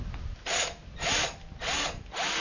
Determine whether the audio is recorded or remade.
recorded